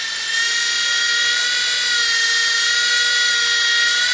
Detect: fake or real real